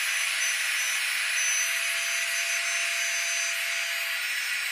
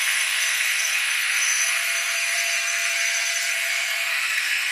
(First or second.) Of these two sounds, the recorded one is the first